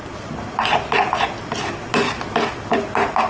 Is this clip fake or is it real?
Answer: real